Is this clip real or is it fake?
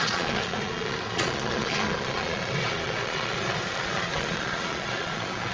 fake